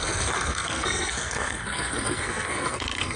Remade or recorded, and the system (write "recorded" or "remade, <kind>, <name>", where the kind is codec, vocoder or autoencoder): remade, codec, SNAC